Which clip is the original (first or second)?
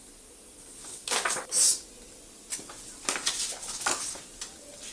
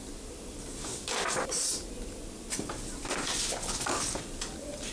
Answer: first